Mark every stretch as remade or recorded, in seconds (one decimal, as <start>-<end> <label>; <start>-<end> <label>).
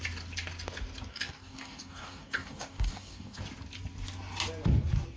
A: 0.0-1.1 recorded; 1.1-3.4 remade; 3.4-5.2 recorded